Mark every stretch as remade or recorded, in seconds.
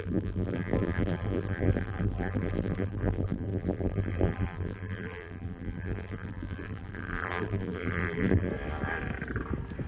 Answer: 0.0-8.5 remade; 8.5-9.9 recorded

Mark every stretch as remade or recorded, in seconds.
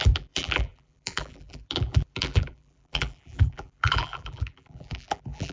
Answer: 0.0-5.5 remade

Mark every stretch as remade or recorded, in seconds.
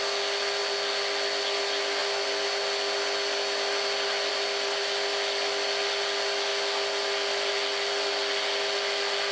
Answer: 0.0-9.3 recorded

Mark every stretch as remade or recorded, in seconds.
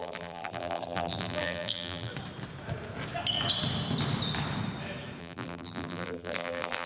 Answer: 0.0-2.1 remade; 2.1-5.2 recorded; 5.2-6.9 remade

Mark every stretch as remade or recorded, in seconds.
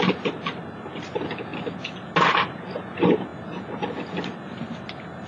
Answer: 0.0-5.3 recorded